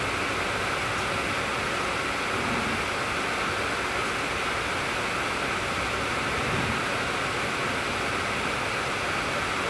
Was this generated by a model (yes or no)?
no